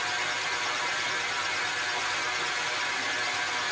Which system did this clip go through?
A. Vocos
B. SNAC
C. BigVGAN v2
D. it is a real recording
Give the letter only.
D